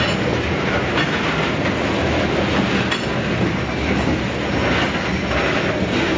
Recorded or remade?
recorded